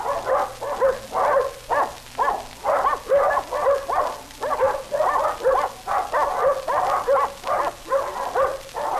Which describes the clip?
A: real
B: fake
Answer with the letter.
A